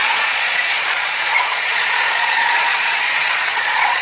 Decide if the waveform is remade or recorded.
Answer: remade